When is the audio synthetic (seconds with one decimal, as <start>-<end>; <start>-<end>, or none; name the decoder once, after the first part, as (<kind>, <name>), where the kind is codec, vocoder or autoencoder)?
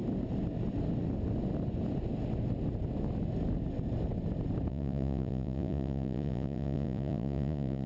4.7-7.9 (vocoder, Vocos)